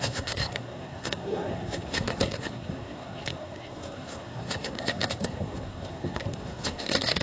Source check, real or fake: fake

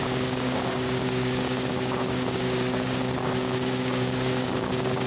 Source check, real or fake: fake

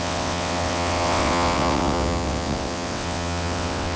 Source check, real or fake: fake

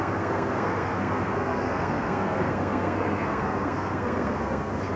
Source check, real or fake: fake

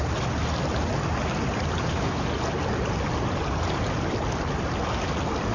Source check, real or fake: real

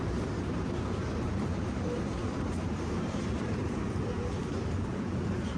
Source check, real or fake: fake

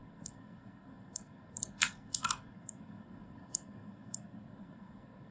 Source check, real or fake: fake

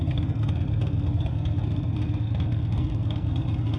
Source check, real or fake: fake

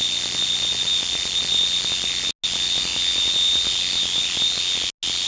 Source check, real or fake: real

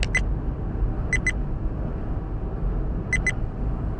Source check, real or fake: real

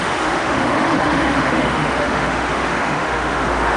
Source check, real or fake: fake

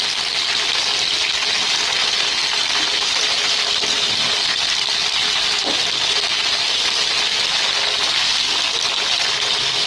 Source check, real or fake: real